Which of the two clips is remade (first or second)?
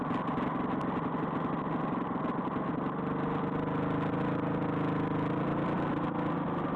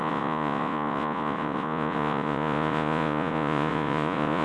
second